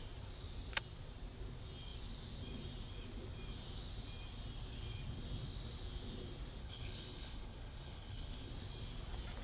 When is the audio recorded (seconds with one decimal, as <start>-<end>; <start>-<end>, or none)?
0.0-6.6; 8.5-9.4